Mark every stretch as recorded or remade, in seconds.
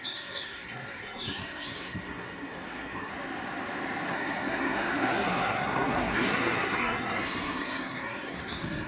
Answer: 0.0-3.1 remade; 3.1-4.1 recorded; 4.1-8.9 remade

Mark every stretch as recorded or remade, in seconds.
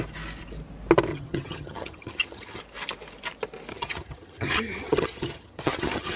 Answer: 0.0-1.1 recorded; 1.1-2.6 remade; 2.6-3.7 recorded; 3.7-6.2 remade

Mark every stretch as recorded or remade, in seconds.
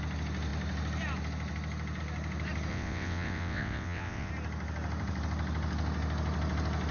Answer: 0.0-2.7 recorded; 2.7-4.3 remade; 4.3-6.9 recorded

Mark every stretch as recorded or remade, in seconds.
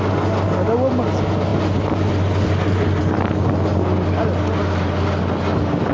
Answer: 0.0-5.9 recorded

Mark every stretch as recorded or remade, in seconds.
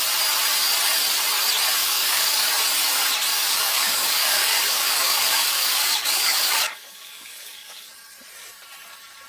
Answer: 0.0-1.8 recorded; 1.8-2.5 remade; 2.5-3.3 recorded; 3.3-7.9 remade; 7.9-9.3 recorded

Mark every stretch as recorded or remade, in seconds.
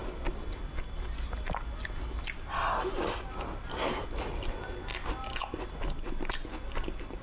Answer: 0.0-7.2 recorded